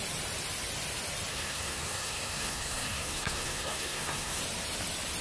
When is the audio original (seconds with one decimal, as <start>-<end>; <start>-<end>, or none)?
0.0-1.3; 4.4-5.2